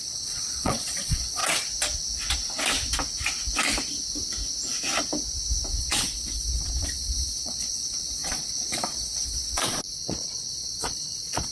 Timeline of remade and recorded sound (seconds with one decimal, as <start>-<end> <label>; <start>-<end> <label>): 0.0-1.4 remade; 1.4-5.8 recorded; 5.8-11.5 remade